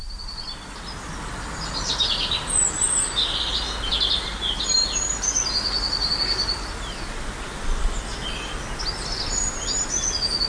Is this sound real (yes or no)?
yes